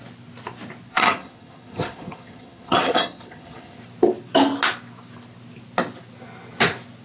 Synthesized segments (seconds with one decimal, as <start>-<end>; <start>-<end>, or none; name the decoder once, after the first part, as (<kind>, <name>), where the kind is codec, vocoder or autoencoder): 0.9-3.8 (vocoder, HiFi-GAN)